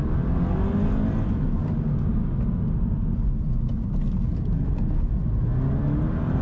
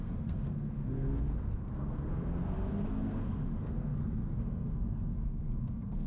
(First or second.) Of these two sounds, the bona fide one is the first